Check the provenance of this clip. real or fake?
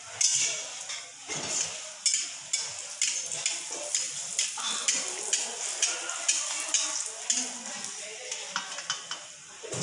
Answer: real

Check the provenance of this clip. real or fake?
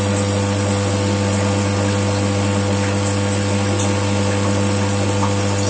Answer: real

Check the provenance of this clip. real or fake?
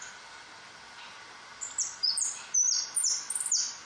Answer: fake